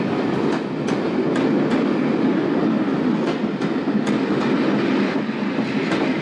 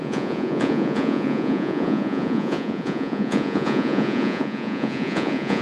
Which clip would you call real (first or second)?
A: first